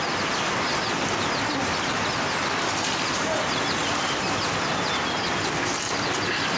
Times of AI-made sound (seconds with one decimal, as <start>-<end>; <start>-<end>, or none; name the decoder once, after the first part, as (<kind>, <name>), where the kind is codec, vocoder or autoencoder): none